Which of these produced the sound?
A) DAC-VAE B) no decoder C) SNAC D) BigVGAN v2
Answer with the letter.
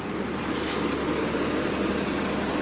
B